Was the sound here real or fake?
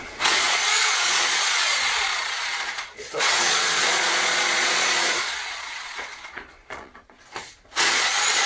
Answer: fake